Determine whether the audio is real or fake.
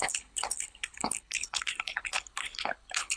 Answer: fake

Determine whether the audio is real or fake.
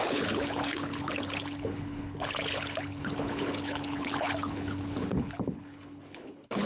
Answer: fake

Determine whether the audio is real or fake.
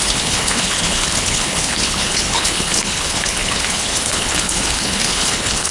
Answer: fake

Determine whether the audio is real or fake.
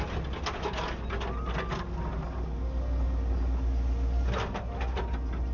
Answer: real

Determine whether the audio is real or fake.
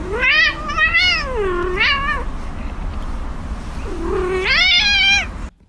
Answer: real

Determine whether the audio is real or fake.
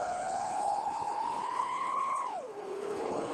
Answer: fake